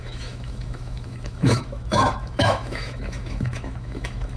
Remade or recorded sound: remade